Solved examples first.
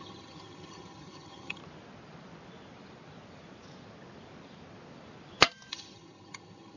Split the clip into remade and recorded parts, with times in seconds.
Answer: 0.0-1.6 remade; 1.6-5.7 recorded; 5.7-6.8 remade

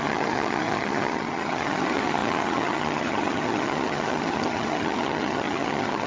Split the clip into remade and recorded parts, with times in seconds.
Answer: 0.0-6.1 remade

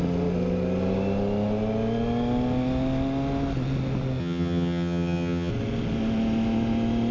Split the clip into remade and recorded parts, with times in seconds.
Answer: 0.0-4.2 recorded; 4.2-5.5 remade; 5.5-7.1 recorded